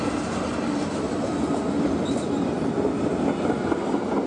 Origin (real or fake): real